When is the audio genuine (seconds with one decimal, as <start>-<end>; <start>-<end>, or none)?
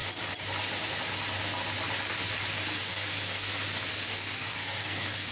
0.0-2.9; 3.5-4.1